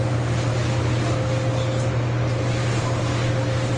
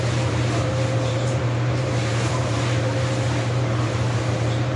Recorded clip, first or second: first